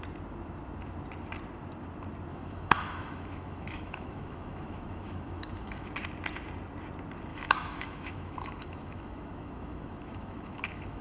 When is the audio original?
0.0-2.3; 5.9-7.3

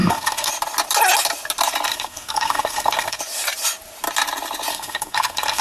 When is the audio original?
0.5-1.9; 3.2-4.7